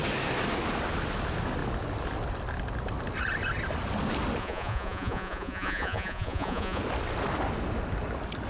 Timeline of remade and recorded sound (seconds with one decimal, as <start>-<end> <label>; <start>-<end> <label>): 0.0-4.4 recorded; 4.4-6.8 remade; 6.8-8.5 recorded